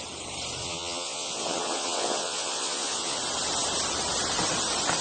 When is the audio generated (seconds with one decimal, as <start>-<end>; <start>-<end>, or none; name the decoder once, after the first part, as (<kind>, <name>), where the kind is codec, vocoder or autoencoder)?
0.6-3.2 (vocoder, Vocos)

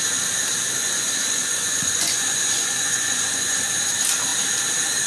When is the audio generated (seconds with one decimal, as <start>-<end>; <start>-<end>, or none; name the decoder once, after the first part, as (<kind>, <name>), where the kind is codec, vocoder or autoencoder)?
0.8-3.8 (vocoder, Vocos)

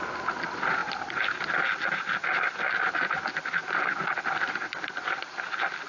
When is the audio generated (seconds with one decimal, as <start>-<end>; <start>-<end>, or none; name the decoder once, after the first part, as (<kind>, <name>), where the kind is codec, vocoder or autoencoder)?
none

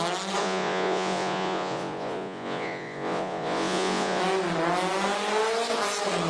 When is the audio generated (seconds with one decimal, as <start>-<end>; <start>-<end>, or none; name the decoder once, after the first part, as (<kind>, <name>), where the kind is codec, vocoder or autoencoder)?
0.4-4.2 (vocoder, Vocos)

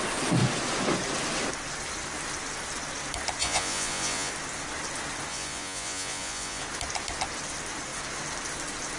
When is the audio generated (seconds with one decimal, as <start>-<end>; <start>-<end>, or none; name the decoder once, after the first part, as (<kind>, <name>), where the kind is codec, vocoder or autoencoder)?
3.4-4.3 (vocoder, Vocos); 5.3-6.6

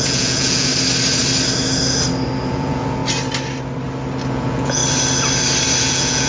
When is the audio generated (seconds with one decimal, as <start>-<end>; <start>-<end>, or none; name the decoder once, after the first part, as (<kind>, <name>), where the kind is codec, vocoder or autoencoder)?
0.0-0.7 (vocoder, Vocos); 2.4-3.0; 4.3-4.8; 5.8-6.3

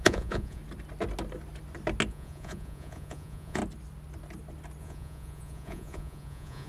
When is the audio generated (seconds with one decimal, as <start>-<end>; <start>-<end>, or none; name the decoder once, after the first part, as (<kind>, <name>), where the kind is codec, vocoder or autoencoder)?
0.0-0.6 (vocoder, Vocos); 2.1-3.6; 4.8-6.7